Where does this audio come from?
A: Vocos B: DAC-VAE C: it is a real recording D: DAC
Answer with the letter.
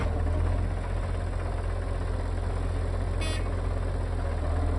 C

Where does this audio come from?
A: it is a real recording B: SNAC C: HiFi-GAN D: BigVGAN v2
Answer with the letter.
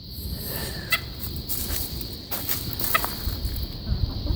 A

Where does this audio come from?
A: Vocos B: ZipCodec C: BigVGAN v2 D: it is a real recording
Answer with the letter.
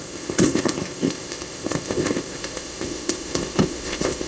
B